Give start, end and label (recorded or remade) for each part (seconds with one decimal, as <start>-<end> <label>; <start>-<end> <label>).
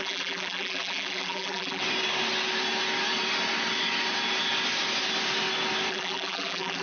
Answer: 0.0-1.8 remade; 1.8-5.9 recorded; 5.9-6.8 remade